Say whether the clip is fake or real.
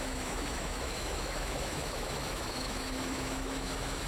fake